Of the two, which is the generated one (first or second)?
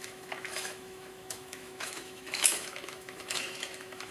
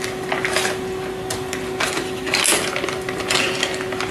first